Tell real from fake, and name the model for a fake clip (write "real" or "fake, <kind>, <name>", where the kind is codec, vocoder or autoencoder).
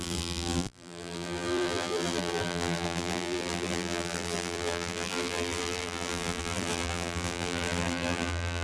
fake, vocoder, BigVGAN v2